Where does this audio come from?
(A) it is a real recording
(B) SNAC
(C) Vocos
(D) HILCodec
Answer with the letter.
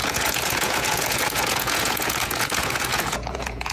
C